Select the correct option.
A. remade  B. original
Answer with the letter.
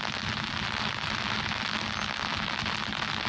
B